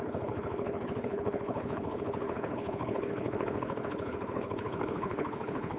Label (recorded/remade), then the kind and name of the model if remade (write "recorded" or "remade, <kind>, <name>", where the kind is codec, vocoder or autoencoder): remade, codec, HILCodec